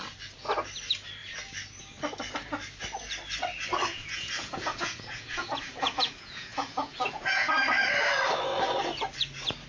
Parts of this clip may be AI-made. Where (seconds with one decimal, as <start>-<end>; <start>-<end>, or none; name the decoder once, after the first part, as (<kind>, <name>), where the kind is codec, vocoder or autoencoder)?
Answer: 3.9-7.5 (vocoder, Vocos)